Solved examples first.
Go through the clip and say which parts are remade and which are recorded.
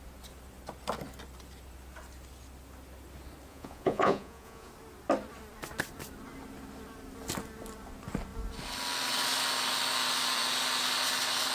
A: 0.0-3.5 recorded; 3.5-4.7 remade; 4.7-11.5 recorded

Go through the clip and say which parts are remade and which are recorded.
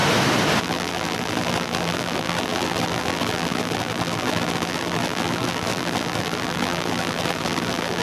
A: 0.0-0.6 recorded; 0.6-8.0 remade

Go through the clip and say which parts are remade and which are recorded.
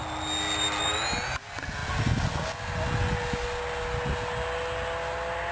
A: 0.0-5.5 recorded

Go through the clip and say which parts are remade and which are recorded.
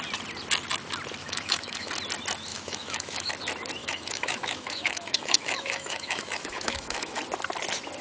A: 0.0-1.2 recorded; 1.2-1.9 remade; 1.9-2.5 recorded; 2.5-3.3 remade; 3.3-3.8 recorded; 3.8-7.2 remade; 7.2-8.0 recorded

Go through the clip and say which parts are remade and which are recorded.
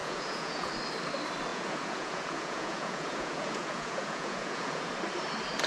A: 0.0-0.7 remade; 0.7-1.5 recorded; 1.5-4.9 remade; 4.9-5.7 recorded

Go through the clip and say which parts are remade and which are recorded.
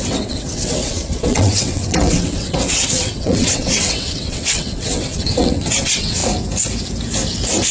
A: 0.0-6.2 remade; 6.2-7.7 recorded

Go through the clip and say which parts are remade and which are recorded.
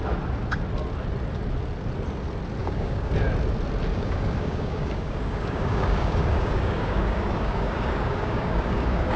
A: 0.0-2.6 recorded; 2.6-3.1 remade; 3.1-3.9 recorded; 3.9-9.2 remade